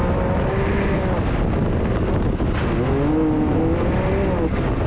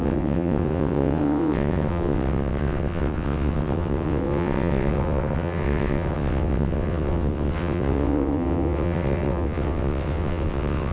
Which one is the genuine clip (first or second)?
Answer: first